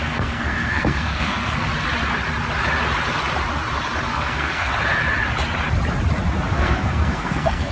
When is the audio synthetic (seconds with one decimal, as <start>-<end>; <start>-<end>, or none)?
0.0-1.7; 4.1-4.7; 6.5-7.7